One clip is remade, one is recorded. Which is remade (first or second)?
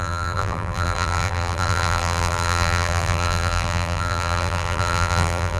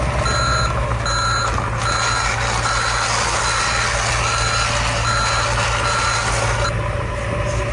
first